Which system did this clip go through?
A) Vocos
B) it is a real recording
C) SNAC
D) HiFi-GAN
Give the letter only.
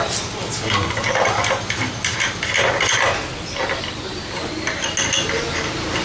B